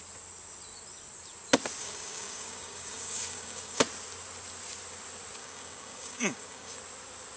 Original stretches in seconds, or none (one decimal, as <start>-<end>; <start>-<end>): 0.0-1.8; 3.8-5.4; 6.8-7.4